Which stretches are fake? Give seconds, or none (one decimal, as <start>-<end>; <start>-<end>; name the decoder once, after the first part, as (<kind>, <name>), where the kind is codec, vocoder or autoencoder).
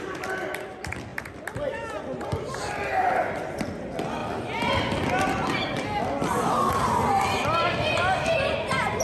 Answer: none